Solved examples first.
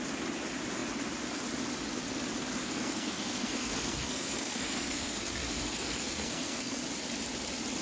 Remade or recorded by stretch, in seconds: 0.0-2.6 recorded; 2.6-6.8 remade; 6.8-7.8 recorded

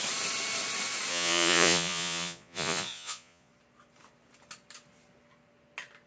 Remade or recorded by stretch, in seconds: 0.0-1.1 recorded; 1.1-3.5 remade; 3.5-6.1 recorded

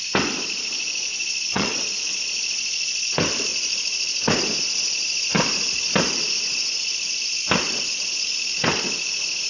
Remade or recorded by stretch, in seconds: 0.0-1.1 recorded; 1.1-1.8 remade; 1.8-9.5 recorded

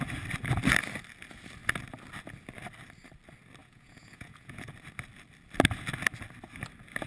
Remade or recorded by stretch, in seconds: 0.0-3.6 recorded; 3.6-4.7 remade; 4.7-7.1 recorded

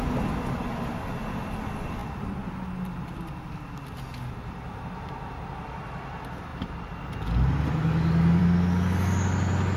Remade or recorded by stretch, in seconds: 0.0-9.8 recorded

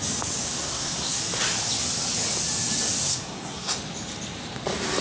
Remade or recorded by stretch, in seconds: 0.0-0.4 recorded; 0.4-1.2 remade; 1.2-3.0 recorded; 3.0-3.8 remade; 3.8-5.0 recorded

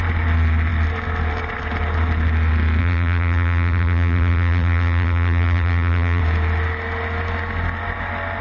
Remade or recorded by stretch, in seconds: 0.0-2.8 recorded; 2.8-6.2 remade; 6.2-8.4 recorded

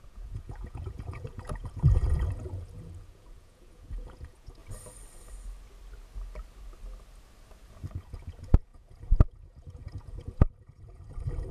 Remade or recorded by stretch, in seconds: 0.0-4.6 remade; 4.6-7.9 recorded; 7.9-11.5 remade